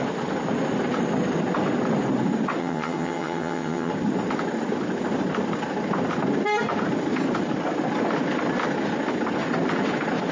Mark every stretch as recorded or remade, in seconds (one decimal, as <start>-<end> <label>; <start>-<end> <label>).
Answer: 0.0-2.6 recorded; 2.6-3.9 remade; 3.9-10.3 recorded